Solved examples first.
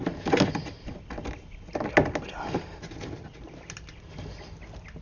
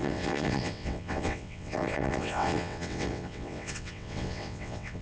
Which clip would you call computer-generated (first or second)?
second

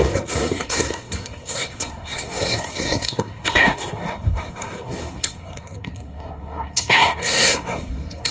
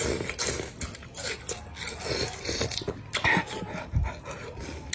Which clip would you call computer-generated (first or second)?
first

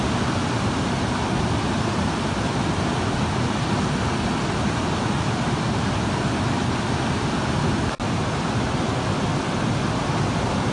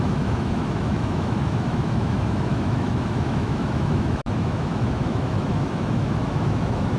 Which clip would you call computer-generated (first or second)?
second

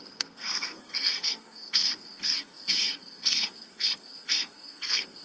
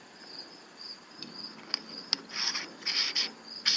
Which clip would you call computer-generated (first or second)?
first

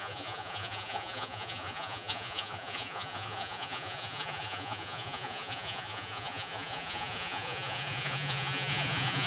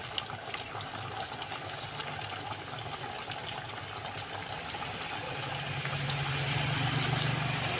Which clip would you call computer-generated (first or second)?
first